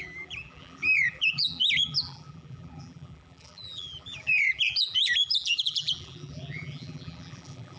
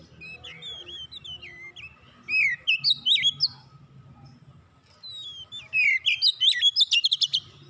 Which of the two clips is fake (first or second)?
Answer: first